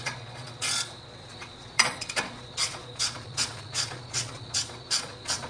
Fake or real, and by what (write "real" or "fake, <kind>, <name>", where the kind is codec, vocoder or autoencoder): fake, vocoder, Vocos